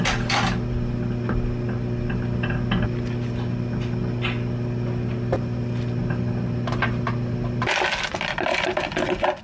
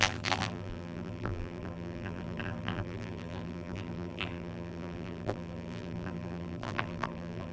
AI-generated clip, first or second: second